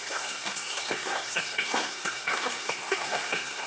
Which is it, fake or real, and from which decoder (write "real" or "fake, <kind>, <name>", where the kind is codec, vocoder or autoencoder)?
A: fake, codec, SNAC